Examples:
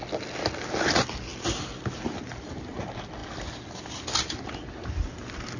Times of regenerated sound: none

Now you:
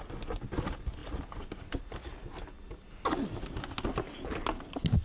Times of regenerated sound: none

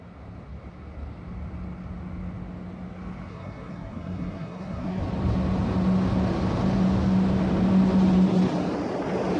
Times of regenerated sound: 3.3-5.0

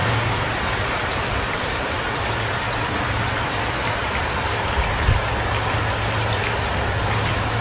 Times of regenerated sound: 0.0-4.3

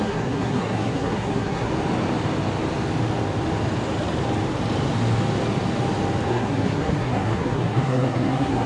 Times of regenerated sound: 0.0-1.7; 6.3-8.7

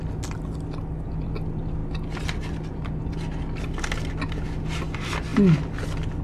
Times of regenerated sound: none

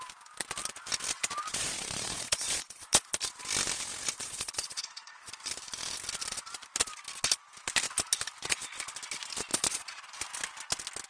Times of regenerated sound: 1.5-3.2; 4.2-5.3; 9.5-10.0

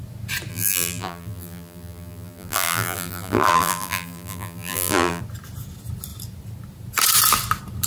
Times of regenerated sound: 0.5-5.2